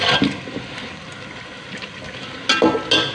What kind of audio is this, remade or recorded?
recorded